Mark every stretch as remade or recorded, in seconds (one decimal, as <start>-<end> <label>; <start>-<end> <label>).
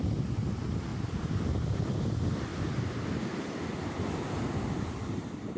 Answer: 0.0-5.6 remade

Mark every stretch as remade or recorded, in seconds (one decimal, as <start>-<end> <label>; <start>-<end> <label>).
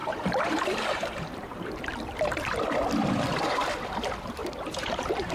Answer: 0.0-1.8 remade; 1.8-4.4 recorded; 4.4-5.3 remade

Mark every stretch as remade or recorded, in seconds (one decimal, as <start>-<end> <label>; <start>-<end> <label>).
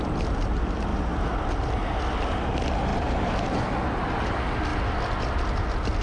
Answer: 0.0-2.9 recorded; 2.9-3.6 remade; 3.6-6.0 recorded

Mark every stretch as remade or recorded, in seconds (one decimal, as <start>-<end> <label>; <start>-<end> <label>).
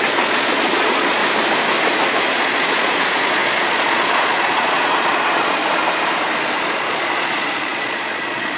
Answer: 0.0-1.2 remade; 1.2-2.3 recorded; 2.3-5.6 remade; 5.6-6.7 recorded; 6.7-8.6 remade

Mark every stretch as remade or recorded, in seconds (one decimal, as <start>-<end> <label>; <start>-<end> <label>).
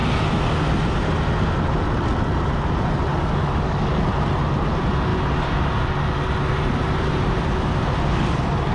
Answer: 0.0-3.1 recorded; 3.1-4.0 remade; 4.0-8.7 recorded